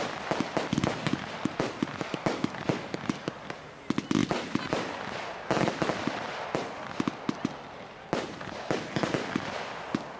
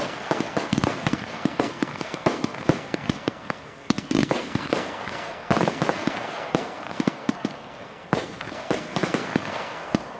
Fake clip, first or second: second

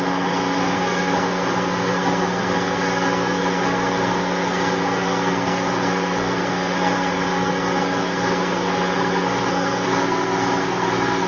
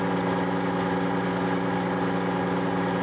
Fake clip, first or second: first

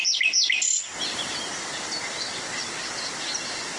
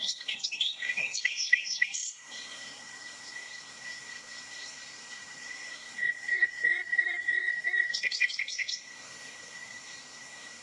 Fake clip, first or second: second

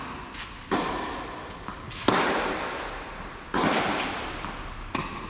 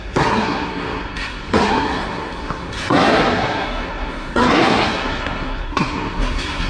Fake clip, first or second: second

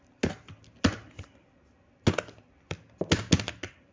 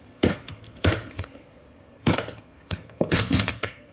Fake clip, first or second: second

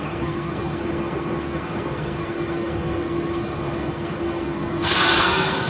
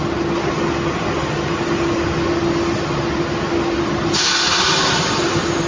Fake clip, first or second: first